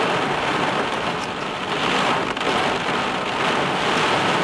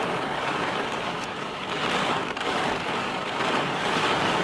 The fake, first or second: second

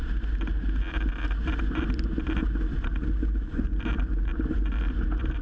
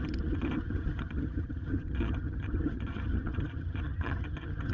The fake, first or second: second